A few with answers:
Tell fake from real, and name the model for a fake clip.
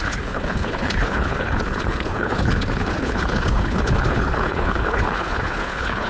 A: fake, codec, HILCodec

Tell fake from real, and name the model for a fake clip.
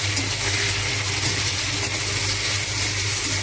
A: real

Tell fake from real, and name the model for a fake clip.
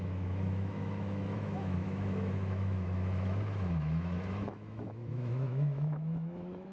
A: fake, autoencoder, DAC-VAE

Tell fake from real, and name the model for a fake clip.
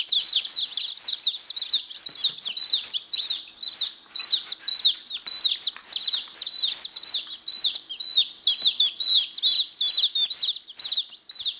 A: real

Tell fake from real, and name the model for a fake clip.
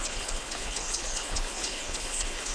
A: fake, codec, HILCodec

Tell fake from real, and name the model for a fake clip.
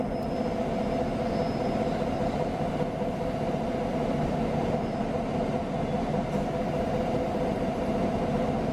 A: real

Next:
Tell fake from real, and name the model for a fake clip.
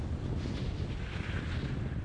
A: real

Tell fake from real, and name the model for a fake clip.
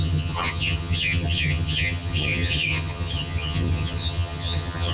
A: fake, vocoder, HiFi-GAN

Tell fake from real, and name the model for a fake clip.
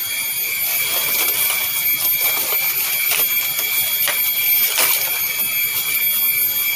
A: real